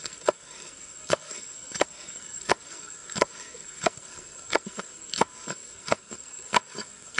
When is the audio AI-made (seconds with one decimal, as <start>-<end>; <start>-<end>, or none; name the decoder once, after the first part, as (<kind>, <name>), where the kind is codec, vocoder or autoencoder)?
0.0-7.2 (codec, SNAC)